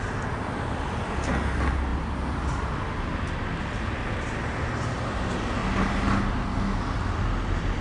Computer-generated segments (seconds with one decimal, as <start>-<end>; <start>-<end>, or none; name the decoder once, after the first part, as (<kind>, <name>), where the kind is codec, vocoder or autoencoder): none